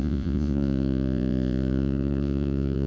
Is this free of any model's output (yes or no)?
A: no